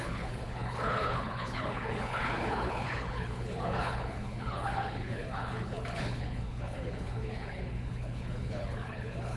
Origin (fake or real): fake